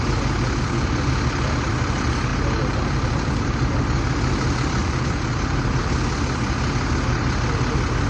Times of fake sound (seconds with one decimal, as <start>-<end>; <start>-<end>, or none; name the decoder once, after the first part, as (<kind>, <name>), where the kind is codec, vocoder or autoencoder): 2.3-3.8 (vocoder, BigVGAN v2); 4.8-5.8